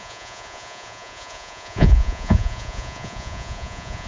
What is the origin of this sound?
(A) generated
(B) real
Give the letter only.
A